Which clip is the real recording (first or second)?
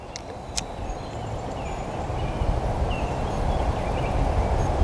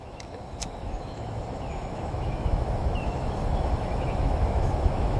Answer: first